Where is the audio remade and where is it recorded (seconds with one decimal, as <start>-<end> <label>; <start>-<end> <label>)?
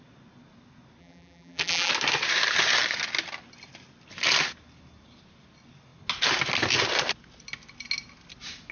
0.0-1.0 recorded; 1.0-1.9 remade; 1.9-8.7 recorded